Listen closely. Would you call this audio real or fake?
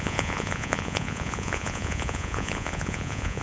fake